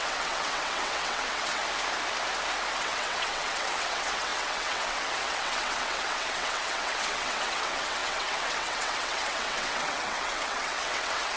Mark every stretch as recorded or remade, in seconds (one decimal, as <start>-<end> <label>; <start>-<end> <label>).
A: 0.0-1.6 remade; 1.6-2.8 recorded; 2.8-11.4 remade